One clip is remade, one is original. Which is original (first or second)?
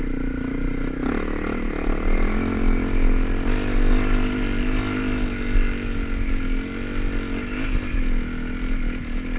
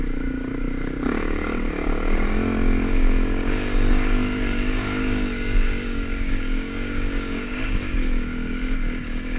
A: first